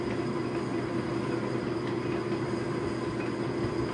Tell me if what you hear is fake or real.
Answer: real